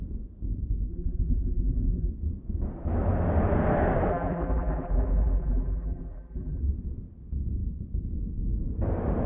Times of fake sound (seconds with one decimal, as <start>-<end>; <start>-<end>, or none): 0.9-2.1; 4.1-6.6